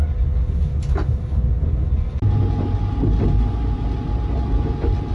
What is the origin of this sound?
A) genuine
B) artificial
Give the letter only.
A